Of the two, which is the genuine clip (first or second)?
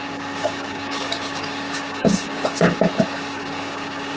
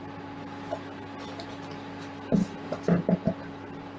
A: second